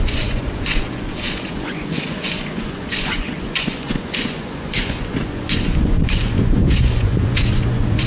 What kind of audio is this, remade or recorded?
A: remade